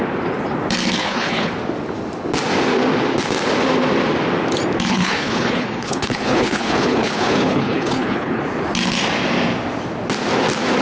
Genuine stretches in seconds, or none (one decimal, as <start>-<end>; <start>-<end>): 0.0-1.0; 1.5-4.9; 8.4-10.8